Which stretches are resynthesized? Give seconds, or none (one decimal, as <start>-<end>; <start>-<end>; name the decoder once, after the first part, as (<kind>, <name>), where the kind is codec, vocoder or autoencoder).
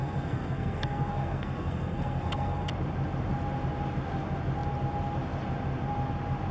0.0-2.7 (codec, SNAC)